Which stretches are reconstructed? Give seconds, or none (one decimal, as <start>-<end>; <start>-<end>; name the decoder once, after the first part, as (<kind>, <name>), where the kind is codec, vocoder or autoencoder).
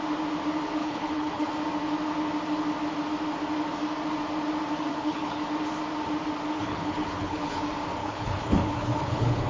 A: 0.8-1.5 (codec, HILCodec); 4.9-5.4; 6.5-7.6; 8.0-9.5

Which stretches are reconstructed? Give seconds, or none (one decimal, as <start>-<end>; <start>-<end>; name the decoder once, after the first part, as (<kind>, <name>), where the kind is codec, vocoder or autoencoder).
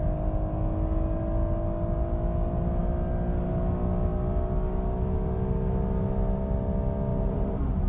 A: 7.1-7.9 (vocoder, BigVGAN v2)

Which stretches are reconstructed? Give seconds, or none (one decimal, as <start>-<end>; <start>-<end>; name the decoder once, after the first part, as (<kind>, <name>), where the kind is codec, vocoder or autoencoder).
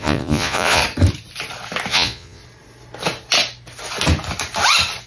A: 0.0-0.8 (vocoder, Vocos); 1.9-2.4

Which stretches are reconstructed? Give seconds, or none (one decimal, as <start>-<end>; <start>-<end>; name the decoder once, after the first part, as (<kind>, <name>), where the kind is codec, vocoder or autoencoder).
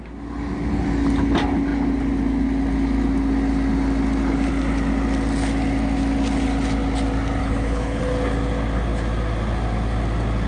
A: 7.4-8.0 (codec, HILCodec)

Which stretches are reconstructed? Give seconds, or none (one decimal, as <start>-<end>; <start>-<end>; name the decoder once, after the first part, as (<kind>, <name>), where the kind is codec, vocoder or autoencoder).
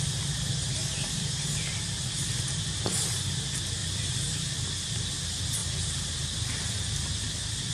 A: 0.8-1.5 (vocoder, BigVGAN v2); 3.8-4.5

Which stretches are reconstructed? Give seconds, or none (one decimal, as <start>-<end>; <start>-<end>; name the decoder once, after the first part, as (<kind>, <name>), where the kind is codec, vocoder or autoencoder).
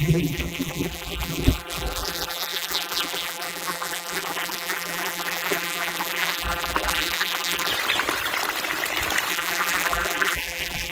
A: 0.0-7.7 (vocoder, BigVGAN v2); 9.3-10.9